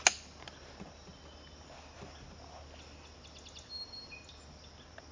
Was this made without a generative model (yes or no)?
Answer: yes